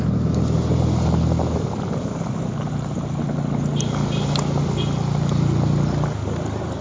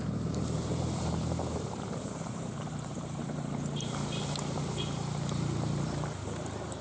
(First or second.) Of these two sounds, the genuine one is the first